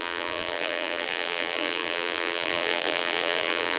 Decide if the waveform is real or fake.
fake